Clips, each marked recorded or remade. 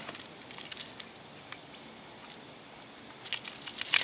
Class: recorded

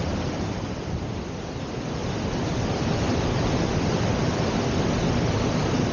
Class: recorded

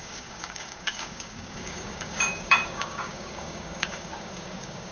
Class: remade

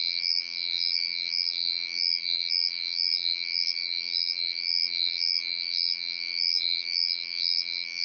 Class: remade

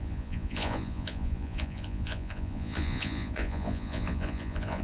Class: remade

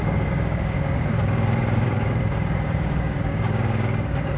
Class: remade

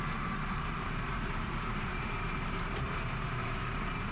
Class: remade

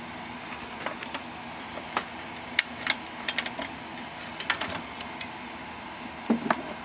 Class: recorded